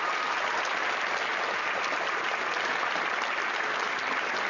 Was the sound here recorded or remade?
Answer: recorded